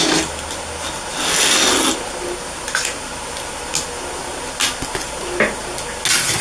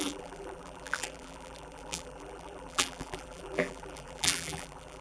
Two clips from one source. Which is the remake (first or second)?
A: second